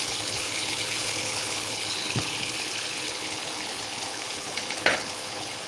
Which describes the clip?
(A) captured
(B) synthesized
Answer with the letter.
B